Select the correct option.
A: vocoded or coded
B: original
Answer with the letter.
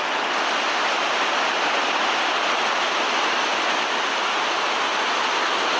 B